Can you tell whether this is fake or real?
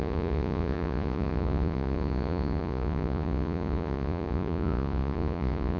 fake